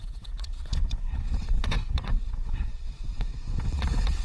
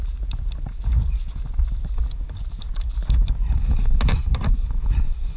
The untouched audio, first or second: second